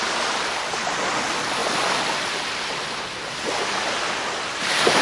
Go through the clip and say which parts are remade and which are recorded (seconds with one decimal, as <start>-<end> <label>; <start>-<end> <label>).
0.0-5.0 recorded